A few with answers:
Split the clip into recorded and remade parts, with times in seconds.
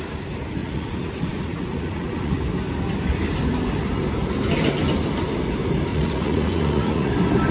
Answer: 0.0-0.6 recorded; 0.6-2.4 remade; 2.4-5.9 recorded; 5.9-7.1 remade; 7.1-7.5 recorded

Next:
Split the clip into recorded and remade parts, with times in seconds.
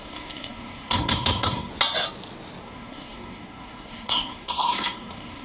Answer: 0.0-1.7 remade; 1.7-2.6 recorded; 2.6-5.4 remade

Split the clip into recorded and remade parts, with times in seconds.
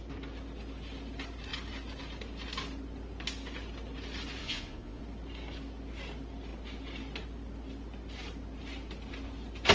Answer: 0.0-4.4 recorded; 4.4-5.0 remade; 5.0-9.7 recorded